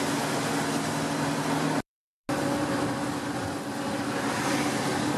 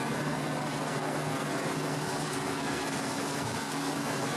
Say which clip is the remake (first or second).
second